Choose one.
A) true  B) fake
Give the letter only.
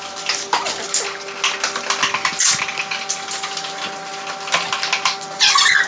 A